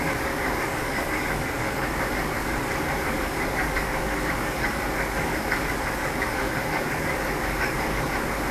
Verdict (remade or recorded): remade